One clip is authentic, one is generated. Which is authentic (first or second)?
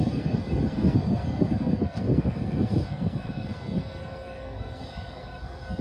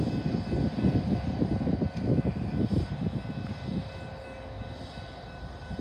second